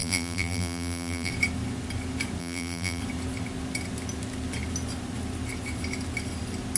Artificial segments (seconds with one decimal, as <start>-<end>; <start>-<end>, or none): 0.0-1.3; 2.4-3.0